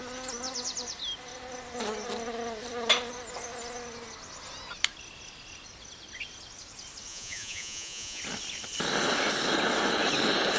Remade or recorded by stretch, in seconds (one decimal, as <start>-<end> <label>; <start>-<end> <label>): 0.0-7.1 recorded; 7.1-8.2 remade; 8.2-10.6 recorded